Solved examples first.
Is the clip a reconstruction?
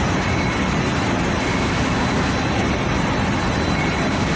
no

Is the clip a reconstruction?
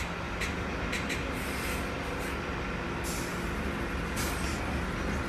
no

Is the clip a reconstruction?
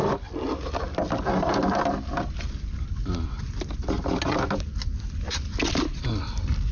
no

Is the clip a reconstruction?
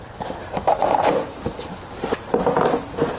yes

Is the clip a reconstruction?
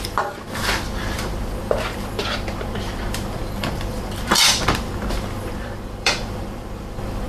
yes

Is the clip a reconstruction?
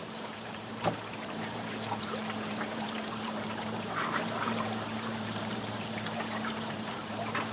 yes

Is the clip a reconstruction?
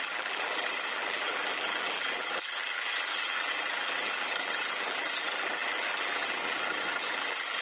yes